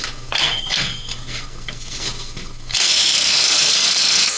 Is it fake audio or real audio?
fake